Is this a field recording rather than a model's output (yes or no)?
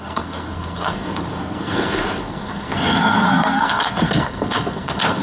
no